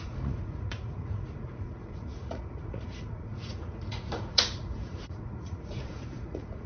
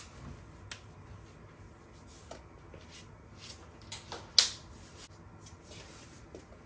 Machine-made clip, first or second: first